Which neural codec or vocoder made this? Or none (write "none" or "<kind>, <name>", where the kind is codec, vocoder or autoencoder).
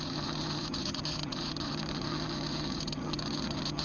vocoder, HiFi-GAN